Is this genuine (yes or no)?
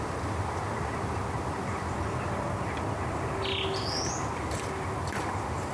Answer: yes